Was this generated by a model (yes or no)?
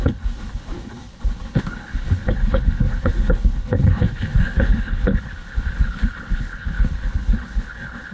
yes